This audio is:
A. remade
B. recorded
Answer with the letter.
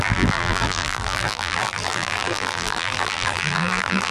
A